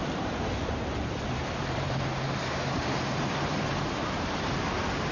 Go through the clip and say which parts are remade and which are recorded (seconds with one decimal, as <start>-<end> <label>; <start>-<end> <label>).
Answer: 0.0-5.1 remade